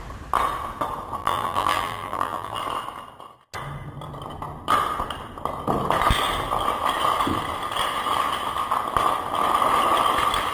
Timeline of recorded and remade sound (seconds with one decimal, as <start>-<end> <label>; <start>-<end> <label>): 0.0-1.2 recorded; 1.2-2.6 remade; 2.6-10.5 recorded